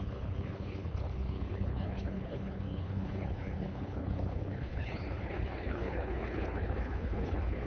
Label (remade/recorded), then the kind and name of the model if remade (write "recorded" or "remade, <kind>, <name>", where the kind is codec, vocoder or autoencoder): remade, codec, HILCodec